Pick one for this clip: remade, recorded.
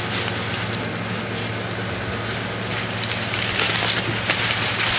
recorded